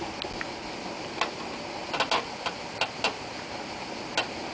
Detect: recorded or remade recorded